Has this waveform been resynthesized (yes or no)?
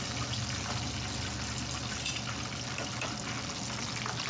no